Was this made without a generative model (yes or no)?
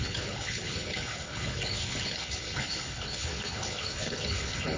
no